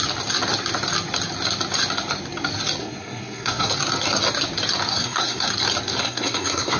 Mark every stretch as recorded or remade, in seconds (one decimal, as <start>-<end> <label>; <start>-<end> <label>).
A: 0.0-2.8 recorded; 2.8-3.7 remade; 3.7-4.9 recorded; 4.9-5.5 remade; 5.5-6.0 recorded; 6.0-6.8 remade